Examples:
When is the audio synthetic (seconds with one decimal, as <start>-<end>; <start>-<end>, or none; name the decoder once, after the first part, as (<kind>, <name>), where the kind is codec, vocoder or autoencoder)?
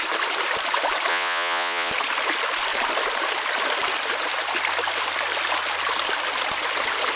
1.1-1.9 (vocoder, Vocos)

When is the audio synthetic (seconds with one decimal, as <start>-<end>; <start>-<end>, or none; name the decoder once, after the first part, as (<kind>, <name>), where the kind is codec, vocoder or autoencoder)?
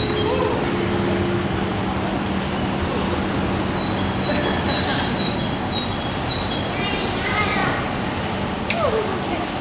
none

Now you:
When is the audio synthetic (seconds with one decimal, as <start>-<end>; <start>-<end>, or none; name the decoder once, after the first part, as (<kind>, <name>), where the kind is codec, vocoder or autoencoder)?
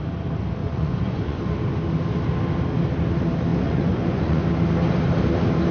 0.6-1.4 (vocoder, Vocos); 3.5-4.4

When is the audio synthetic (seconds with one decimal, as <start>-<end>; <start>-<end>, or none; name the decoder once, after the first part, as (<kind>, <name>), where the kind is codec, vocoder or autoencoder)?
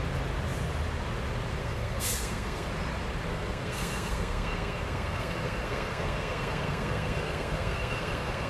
1.6-2.7 (codec, SNAC); 3.3-8.5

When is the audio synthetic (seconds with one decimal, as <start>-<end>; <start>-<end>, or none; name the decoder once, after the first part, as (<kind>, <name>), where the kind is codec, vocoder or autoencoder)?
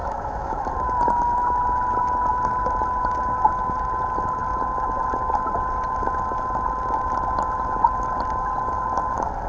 0.0-0.7 (autoencoder, DAC-VAE)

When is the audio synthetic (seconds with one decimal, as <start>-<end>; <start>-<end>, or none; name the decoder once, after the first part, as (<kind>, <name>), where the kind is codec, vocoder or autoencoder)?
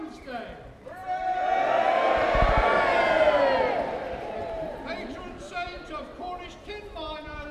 none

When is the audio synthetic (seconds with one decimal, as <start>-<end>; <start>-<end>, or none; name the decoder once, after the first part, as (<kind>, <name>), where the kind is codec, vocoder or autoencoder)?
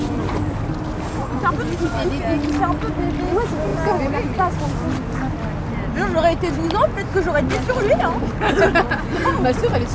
none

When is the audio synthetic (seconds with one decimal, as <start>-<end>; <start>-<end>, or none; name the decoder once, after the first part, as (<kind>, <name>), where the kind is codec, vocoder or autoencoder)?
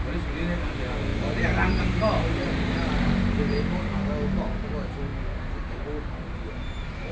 none